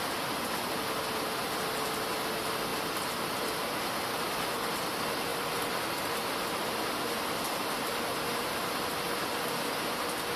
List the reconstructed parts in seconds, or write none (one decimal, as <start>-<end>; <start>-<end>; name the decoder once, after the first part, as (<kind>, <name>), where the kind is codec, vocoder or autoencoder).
none

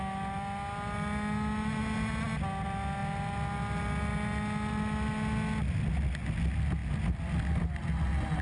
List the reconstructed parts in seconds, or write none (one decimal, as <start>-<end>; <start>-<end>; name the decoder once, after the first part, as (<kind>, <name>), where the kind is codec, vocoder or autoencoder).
none